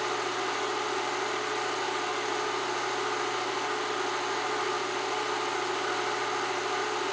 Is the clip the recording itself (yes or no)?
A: yes